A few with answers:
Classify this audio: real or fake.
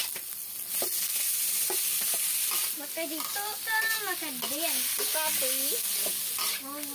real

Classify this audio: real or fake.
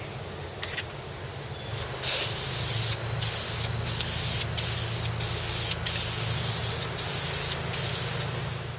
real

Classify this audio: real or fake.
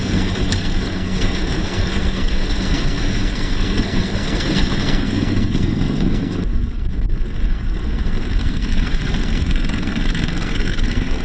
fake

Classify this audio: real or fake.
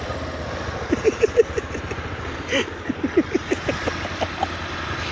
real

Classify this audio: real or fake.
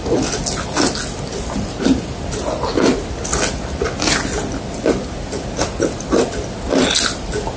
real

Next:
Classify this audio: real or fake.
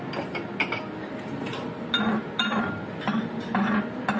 real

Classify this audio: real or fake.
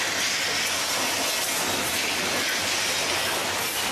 real